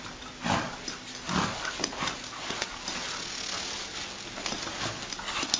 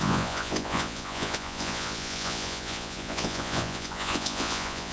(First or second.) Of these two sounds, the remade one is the second